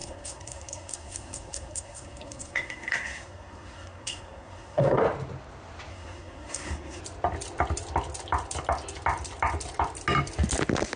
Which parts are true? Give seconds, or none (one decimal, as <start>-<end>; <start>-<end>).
5.0-5.9; 7.0-11.0